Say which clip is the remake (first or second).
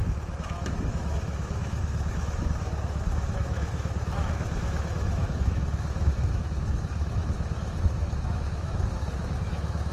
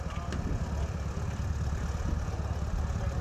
first